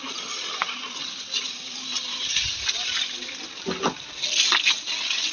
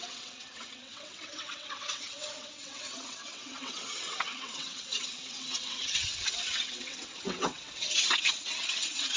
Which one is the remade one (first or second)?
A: second